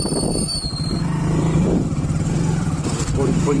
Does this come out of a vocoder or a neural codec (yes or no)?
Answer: yes